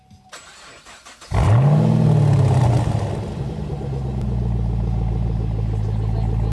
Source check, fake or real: real